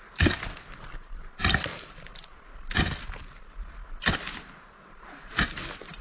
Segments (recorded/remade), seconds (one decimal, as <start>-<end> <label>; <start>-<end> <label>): 0.0-6.0 recorded